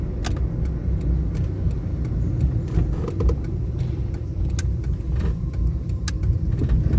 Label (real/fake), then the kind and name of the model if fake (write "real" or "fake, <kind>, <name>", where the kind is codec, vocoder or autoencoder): real